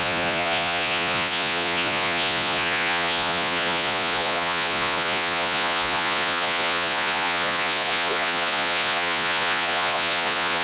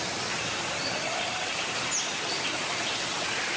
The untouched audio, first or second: second